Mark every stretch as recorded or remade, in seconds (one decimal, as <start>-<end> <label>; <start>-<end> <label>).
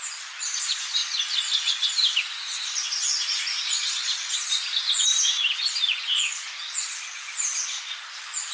0.0-8.5 recorded